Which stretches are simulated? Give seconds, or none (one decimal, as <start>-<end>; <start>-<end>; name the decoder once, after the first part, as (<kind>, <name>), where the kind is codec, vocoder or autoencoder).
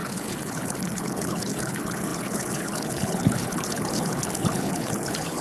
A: 0.0-5.4 (codec, HILCodec)